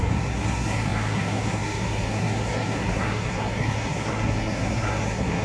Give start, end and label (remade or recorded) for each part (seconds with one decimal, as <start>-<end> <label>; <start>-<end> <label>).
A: 0.0-5.4 remade